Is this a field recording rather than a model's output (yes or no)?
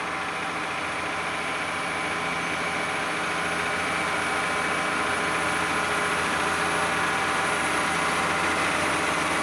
yes